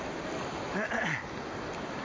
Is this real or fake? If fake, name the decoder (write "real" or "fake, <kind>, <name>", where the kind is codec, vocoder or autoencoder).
real